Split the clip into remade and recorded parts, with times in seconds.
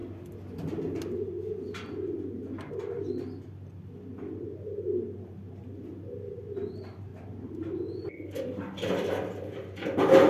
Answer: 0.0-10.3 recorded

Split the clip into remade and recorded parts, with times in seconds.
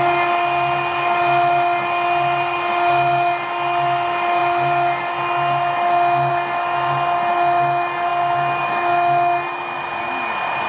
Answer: 0.0-10.7 recorded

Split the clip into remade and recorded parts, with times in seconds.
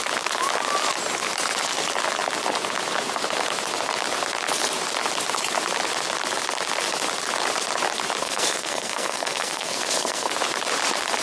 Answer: 0.0-8.2 recorded; 8.2-10.3 remade; 10.3-11.2 recorded